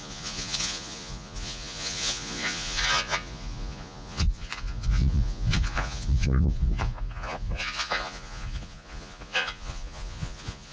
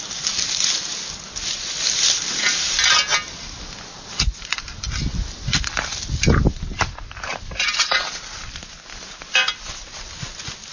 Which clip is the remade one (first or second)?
first